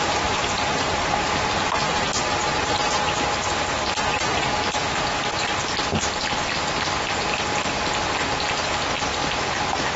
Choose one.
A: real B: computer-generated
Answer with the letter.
A